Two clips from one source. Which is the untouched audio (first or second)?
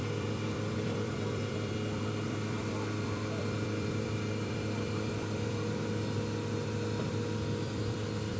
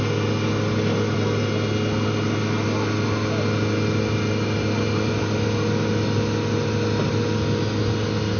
second